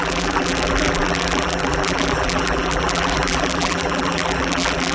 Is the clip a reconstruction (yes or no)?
yes